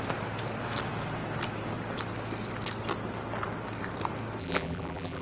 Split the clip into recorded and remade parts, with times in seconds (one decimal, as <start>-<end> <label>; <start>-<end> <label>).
0.0-4.4 recorded; 4.4-5.2 remade